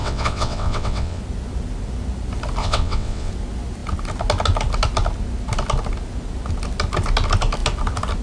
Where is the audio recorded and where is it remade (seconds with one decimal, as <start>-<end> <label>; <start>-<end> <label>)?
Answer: 0.0-1.2 remade; 1.2-2.6 recorded; 2.6-3.3 remade; 3.3-8.2 recorded